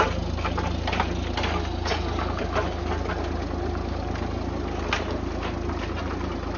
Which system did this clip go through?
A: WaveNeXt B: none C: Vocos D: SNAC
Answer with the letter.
B